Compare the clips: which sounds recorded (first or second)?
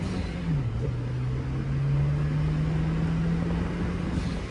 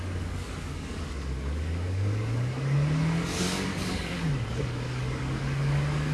first